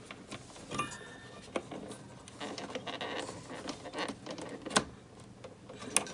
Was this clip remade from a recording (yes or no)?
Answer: no